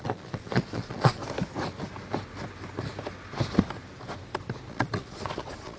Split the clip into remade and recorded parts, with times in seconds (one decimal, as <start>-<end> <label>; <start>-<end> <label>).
0.0-1.2 remade; 1.2-4.7 recorded; 4.7-5.8 remade